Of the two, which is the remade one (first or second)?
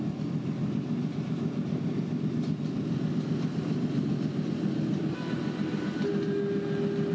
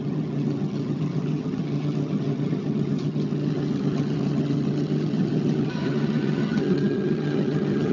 second